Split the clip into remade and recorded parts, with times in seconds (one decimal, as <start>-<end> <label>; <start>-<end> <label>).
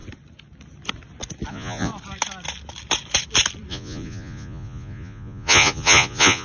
0.0-1.5 recorded; 1.5-1.9 remade; 1.9-3.7 recorded; 3.7-6.4 remade